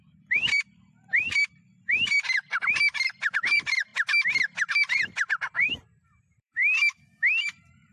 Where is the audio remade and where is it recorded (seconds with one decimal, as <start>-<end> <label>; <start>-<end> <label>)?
0.0-3.9 remade; 3.9-4.7 recorded; 4.7-6.6 remade; 6.6-7.4 recorded; 7.4-7.9 remade